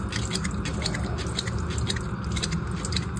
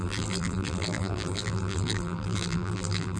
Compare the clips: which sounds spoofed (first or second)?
second